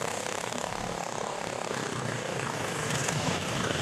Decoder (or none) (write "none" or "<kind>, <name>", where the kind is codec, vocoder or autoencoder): codec, DAC